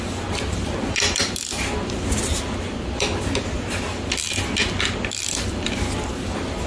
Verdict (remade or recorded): recorded